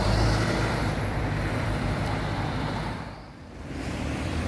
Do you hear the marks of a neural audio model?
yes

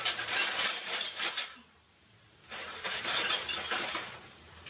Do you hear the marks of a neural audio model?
yes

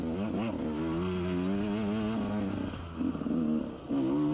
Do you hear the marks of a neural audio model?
no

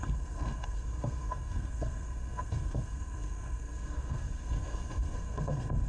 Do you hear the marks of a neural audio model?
yes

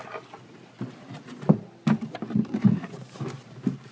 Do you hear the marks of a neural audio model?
no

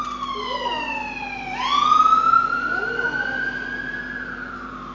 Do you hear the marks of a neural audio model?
no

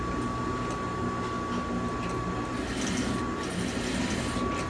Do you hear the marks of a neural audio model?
no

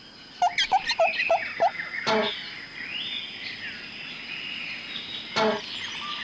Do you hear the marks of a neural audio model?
no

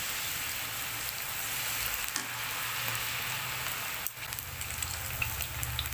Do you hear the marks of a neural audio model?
no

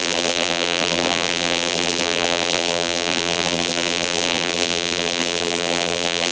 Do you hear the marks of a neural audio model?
yes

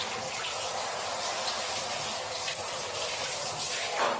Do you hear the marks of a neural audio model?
yes